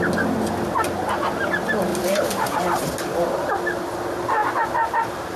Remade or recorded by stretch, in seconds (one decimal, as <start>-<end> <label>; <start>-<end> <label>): 0.0-1.9 recorded; 1.9-3.5 remade; 3.5-5.4 recorded